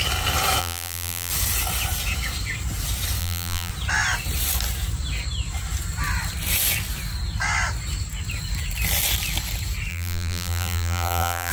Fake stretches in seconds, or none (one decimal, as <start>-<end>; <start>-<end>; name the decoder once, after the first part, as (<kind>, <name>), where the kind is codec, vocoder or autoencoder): 0.6-1.3 (vocoder, BigVGAN v2); 3.2-3.7; 9.9-11.5

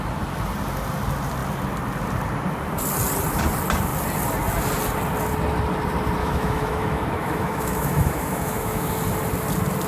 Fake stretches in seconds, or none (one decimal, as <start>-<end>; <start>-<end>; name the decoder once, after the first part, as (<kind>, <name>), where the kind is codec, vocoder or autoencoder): 6.2-8.9 (autoencoder, DAC-VAE)

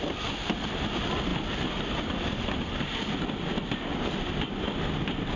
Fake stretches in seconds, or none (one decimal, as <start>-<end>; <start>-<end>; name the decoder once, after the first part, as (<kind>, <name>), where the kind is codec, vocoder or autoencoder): none

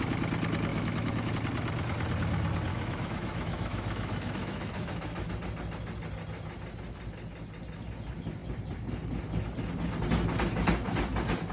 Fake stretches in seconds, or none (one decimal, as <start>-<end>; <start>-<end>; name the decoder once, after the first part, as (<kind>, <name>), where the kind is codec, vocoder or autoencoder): 0.7-1.3 (autoencoder, DAC-VAE); 2.7-5.3

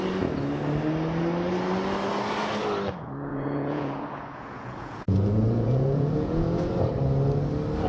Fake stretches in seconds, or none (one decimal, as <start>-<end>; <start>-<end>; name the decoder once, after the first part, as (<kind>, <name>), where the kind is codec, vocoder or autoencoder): 3.3-6.7 (vocoder, Vocos)

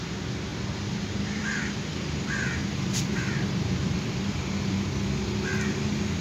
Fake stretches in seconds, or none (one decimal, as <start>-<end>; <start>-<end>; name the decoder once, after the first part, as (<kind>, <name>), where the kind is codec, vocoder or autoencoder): 0.5-1.6 (vocoder, BigVGAN v2); 2.6-4.7

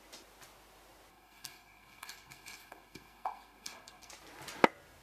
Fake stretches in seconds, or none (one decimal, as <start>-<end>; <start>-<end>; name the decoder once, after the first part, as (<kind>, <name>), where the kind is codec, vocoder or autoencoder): 1.1-4.1 (codec, SNAC)

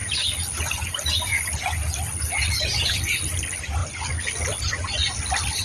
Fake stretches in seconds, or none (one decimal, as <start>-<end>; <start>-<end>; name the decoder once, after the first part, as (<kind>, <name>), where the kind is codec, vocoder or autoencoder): none